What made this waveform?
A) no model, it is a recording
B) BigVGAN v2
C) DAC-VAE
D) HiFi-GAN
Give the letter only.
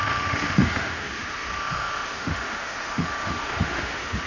C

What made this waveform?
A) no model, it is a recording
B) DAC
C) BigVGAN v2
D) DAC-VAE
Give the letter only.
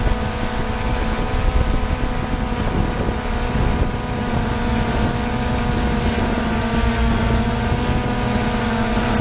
A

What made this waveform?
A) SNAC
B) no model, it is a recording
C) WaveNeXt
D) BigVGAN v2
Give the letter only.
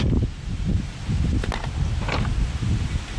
B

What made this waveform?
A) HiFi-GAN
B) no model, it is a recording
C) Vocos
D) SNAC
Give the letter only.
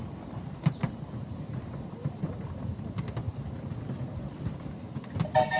B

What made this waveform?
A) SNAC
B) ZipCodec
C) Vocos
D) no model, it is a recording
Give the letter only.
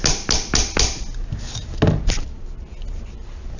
D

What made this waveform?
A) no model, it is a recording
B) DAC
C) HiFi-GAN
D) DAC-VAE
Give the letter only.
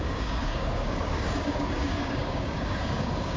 B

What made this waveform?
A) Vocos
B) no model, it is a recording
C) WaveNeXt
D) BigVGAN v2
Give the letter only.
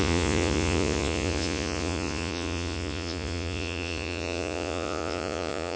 A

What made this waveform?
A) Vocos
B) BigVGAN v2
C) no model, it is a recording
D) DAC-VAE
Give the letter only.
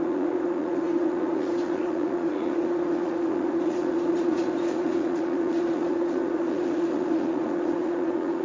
A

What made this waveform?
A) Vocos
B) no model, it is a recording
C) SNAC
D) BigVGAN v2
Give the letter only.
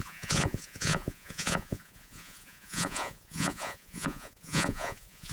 A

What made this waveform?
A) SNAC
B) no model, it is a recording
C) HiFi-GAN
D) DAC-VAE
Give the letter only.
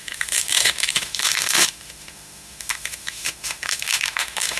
D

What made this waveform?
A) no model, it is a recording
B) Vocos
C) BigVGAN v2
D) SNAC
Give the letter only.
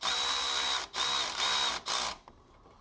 A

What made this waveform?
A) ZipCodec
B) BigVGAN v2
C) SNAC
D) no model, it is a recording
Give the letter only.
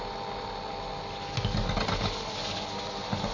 D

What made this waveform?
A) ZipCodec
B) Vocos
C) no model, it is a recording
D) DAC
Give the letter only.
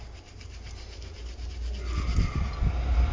C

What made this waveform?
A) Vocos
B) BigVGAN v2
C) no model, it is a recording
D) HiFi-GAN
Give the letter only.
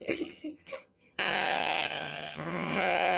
D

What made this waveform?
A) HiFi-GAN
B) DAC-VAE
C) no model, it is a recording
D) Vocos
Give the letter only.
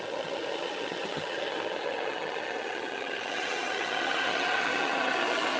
A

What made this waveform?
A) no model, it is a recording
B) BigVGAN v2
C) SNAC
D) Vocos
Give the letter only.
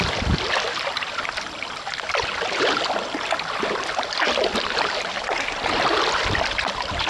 A